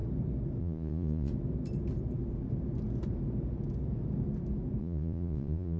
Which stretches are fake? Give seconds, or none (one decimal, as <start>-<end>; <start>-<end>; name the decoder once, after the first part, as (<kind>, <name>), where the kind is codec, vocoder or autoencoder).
0.6-1.3 (vocoder, Vocos); 4.8-5.8